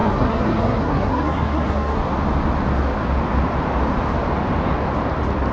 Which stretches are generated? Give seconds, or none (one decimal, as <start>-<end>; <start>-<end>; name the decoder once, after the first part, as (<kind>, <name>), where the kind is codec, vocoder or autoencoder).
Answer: 0.0-2.0 (codec, SNAC)